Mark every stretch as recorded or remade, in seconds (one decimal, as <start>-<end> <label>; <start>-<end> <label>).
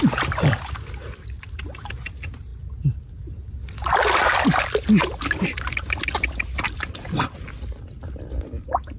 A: 0.0-9.0 recorded